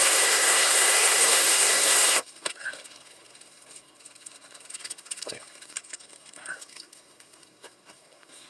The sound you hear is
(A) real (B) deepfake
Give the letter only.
B